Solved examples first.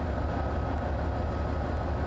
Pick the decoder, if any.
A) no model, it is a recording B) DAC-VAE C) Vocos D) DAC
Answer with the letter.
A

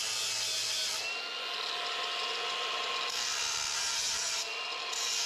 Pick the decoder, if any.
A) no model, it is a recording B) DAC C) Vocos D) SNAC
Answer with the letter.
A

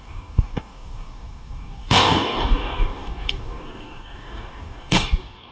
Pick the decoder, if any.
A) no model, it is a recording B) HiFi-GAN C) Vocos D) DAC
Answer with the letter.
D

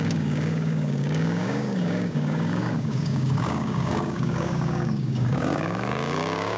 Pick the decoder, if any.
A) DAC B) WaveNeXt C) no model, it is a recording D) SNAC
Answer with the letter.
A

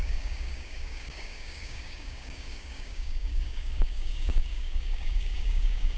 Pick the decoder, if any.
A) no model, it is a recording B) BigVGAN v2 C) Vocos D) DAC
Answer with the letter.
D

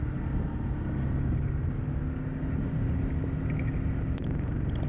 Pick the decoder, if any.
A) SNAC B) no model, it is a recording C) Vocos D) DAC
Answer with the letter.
B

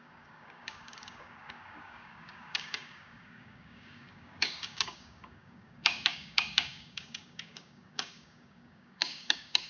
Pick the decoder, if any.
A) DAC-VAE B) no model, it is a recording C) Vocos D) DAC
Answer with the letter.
D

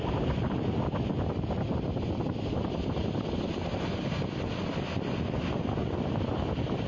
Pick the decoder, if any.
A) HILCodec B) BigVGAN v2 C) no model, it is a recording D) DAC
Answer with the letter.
C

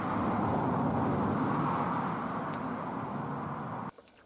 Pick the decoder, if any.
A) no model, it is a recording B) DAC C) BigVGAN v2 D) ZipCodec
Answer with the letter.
A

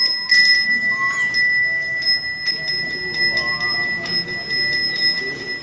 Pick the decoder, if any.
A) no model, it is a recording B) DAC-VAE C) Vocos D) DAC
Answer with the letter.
A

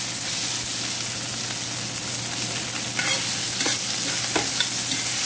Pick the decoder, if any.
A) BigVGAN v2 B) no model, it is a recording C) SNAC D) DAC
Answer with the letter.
B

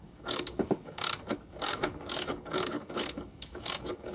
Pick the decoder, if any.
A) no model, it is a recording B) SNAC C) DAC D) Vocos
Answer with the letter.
C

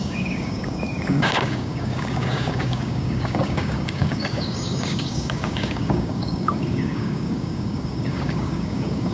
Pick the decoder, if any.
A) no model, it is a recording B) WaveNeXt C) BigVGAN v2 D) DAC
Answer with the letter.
D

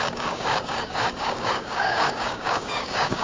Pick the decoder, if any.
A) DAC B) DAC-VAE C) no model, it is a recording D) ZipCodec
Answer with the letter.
A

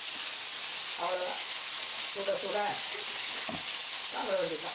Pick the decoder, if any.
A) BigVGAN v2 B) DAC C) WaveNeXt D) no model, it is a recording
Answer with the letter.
D